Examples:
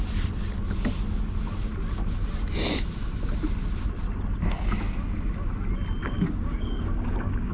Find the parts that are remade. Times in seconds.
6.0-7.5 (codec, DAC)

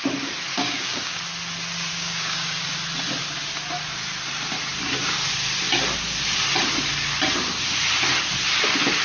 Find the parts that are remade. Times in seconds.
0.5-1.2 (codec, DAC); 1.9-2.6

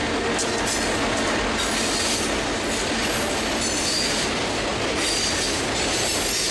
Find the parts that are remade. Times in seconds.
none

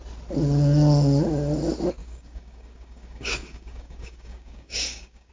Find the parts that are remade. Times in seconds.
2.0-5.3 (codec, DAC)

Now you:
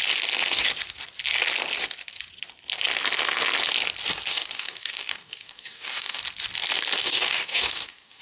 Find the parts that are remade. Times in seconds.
4.3-6.2 (codec, DAC); 7.0-8.2

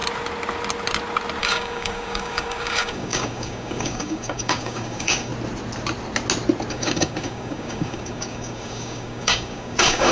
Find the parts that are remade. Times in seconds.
1.4-5.3 (codec, DAC); 6.7-10.1

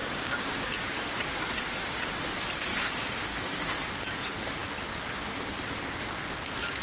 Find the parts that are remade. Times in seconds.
0.0-1.5 (codec, DAC); 2.7-3.6

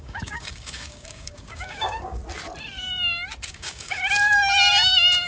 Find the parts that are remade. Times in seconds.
0.0-2.2 (codec, DAC); 3.5-4.0